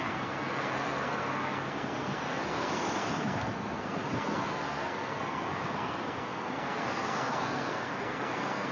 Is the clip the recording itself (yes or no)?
no